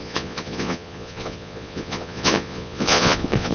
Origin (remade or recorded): remade